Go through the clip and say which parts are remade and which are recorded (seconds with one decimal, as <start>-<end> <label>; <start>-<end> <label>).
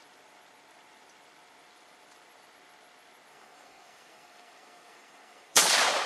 0.0-3.3 recorded; 3.3-5.6 remade; 5.6-6.1 recorded